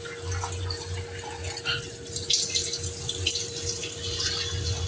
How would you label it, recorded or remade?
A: recorded